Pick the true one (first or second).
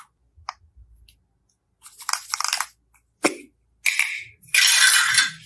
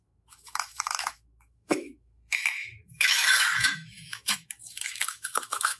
first